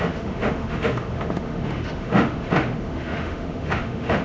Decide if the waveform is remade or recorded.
remade